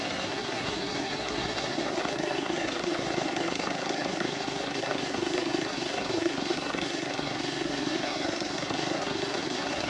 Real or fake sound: fake